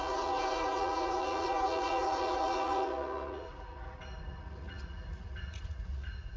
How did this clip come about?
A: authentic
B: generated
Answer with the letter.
B